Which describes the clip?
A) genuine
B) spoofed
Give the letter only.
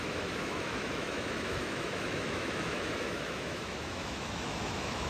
B